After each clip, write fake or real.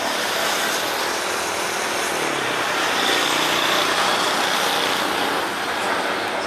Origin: real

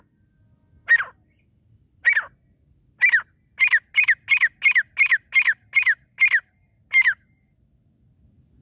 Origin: real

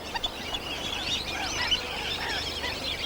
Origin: fake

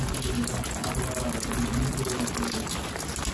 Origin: real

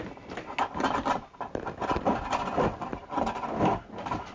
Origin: real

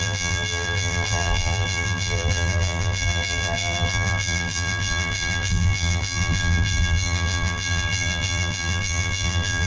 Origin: fake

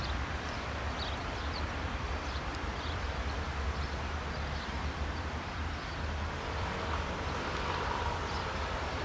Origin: fake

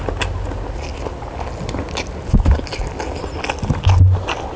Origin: real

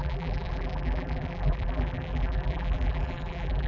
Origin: fake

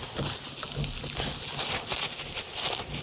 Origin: real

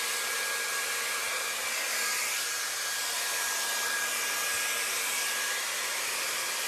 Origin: real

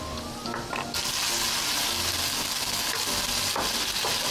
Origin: real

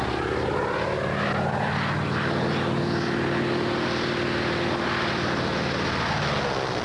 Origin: real